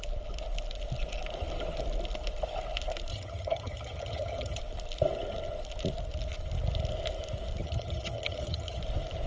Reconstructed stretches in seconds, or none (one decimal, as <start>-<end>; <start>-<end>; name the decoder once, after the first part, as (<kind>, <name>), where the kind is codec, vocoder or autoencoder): 3.1-4.6 (vocoder, HiFi-GAN); 7.6-8.8